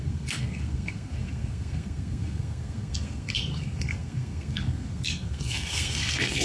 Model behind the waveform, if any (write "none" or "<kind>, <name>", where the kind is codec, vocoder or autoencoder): codec, SNAC